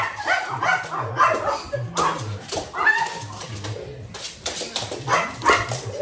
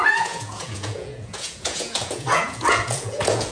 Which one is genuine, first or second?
first